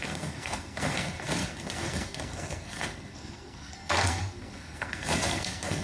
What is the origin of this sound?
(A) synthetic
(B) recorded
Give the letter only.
A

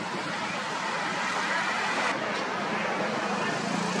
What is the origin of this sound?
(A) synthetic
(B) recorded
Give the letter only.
B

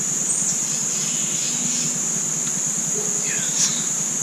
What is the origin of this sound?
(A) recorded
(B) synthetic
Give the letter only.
A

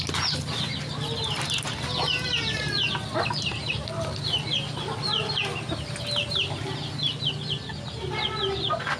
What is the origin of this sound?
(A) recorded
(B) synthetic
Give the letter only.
A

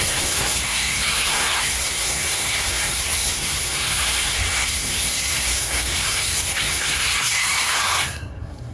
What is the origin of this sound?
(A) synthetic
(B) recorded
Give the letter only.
A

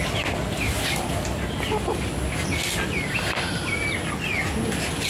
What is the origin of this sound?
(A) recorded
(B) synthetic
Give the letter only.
A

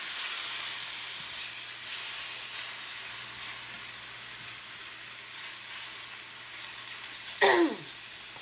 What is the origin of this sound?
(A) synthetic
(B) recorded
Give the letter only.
B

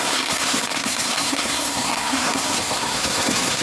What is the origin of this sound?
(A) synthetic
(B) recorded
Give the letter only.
A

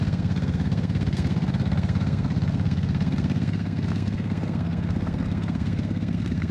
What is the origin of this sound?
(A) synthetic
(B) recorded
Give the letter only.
A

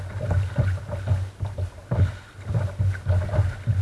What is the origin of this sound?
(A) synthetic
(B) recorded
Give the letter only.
B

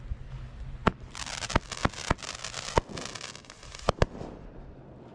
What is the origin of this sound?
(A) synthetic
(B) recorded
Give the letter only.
B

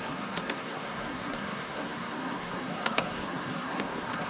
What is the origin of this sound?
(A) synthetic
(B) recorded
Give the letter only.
A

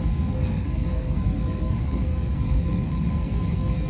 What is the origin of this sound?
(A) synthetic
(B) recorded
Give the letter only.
A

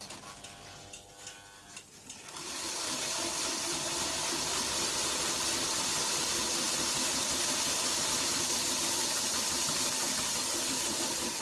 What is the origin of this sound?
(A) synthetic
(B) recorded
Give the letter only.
B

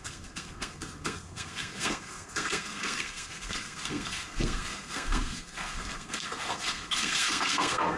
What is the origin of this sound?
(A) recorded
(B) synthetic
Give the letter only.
B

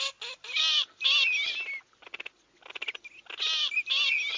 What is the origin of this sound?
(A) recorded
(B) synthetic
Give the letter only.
A